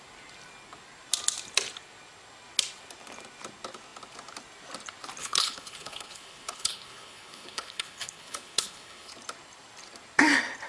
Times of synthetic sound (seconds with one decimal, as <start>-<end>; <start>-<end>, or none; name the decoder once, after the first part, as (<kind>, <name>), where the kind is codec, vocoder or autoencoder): 5.2-9.1 (codec, HILCodec)